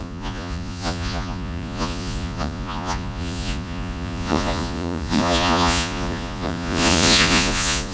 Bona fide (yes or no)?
no